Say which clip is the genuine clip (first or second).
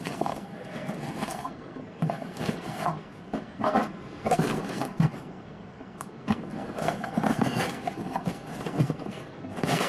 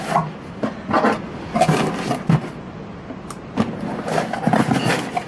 second